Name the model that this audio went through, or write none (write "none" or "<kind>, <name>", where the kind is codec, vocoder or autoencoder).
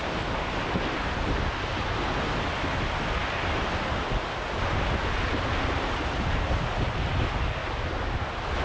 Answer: none